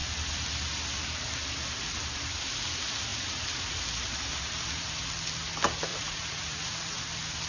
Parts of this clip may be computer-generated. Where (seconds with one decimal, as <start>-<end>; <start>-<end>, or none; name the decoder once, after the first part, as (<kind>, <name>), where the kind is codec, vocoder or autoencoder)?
5.9-7.0 (vocoder, Vocos)